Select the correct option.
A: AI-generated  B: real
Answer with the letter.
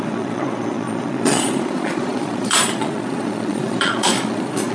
A